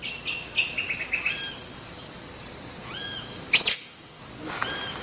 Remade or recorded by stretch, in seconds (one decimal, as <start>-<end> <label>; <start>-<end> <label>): 0.0-3.7 recorded; 3.7-4.2 remade; 4.2-5.0 recorded